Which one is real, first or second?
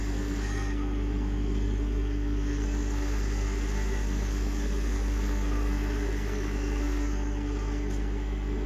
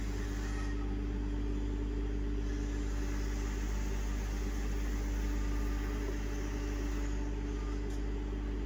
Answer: second